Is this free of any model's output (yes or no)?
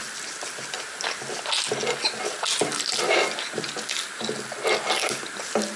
yes